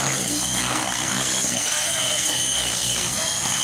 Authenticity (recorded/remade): remade